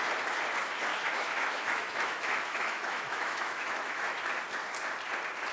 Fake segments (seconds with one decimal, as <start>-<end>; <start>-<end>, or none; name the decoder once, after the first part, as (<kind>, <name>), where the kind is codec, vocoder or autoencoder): 0.9-4.2 (autoencoder, DAC-VAE)